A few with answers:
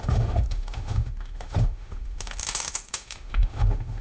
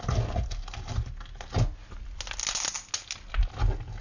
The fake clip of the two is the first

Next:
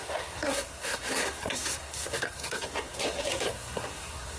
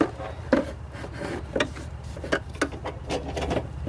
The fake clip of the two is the first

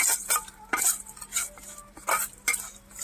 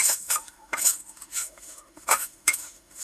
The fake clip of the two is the second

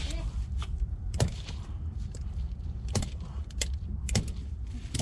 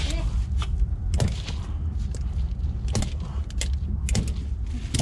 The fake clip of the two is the first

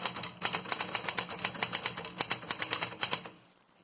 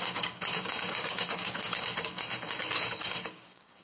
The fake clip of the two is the second